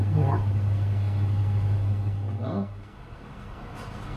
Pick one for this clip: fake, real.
fake